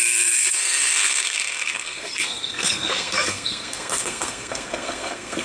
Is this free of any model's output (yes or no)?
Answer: no